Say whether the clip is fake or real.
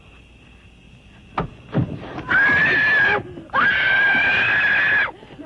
real